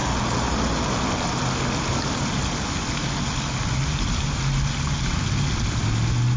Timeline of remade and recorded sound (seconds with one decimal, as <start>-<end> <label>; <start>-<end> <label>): 0.0-6.4 recorded